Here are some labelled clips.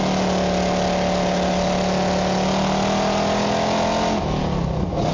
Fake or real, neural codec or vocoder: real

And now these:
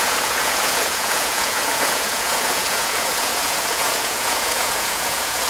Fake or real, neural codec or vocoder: fake, vocoder, Vocos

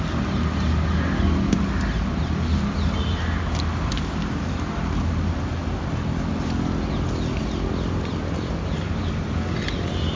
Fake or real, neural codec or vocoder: real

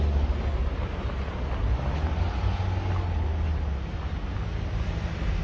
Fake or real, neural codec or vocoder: real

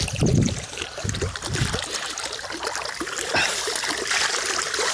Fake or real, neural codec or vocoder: real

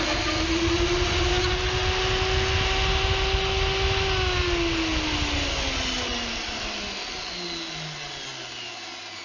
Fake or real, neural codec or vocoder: real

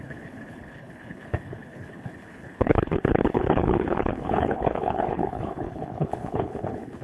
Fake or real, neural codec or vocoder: fake, codec, HILCodec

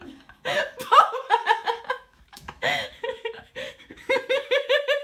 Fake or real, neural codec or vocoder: fake, autoencoder, DAC-VAE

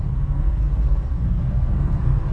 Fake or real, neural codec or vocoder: fake, codec, SNAC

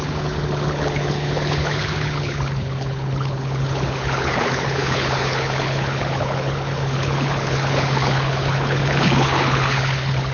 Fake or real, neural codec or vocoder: fake, codec, HILCodec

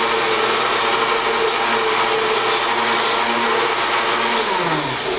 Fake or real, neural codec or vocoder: real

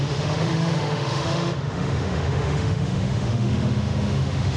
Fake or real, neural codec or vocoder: fake, autoencoder, DAC-VAE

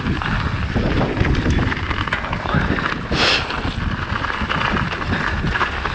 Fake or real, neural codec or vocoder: real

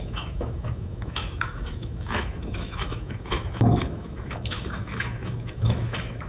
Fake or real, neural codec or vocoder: fake, autoencoder, DAC-VAE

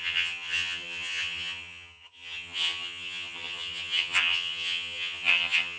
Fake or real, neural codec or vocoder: fake, vocoder, HiFi-GAN